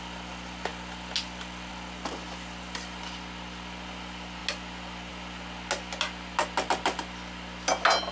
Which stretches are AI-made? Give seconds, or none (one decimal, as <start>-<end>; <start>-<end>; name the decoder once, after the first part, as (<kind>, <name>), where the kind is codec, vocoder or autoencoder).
none